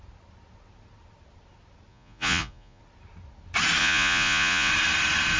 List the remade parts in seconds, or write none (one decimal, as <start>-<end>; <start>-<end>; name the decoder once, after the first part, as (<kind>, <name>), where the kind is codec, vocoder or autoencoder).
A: 1.9-2.8 (vocoder, Vocos); 3.8-4.7